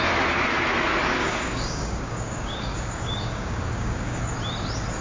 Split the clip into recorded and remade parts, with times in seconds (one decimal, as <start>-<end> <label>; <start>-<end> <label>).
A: 0.0-1.2 recorded; 1.2-4.2 remade; 4.2-5.0 recorded